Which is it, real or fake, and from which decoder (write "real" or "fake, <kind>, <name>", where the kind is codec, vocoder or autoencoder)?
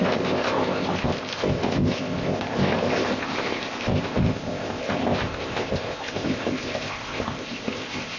fake, codec, ZipCodec